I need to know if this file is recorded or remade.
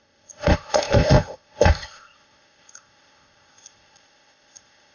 remade